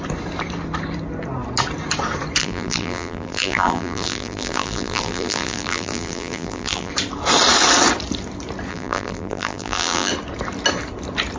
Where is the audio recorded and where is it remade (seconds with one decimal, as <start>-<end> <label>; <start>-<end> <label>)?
0.0-2.4 recorded; 2.4-6.9 remade; 6.9-8.7 recorded; 8.7-10.1 remade; 10.1-11.4 recorded